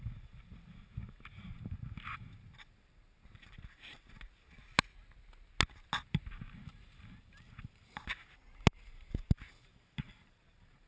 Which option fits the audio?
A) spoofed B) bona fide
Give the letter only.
B